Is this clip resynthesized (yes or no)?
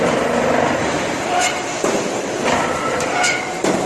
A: no